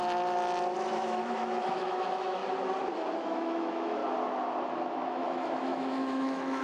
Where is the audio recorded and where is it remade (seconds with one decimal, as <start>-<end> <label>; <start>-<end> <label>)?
0.0-0.9 recorded; 0.9-2.4 remade; 2.4-3.2 recorded; 3.2-4.0 remade; 4.0-4.6 recorded; 4.6-6.6 remade